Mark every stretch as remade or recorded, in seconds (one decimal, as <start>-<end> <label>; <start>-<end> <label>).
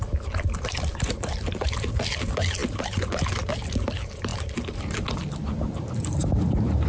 0.0-6.9 remade